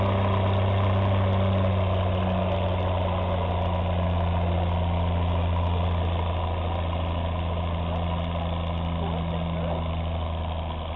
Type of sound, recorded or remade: recorded